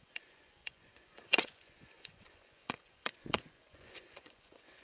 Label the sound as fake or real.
fake